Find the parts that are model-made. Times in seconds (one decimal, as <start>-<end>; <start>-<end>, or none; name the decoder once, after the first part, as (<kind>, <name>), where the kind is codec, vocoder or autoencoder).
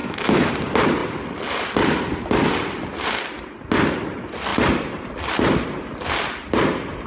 0.0-0.5 (autoencoder, DAC-VAE)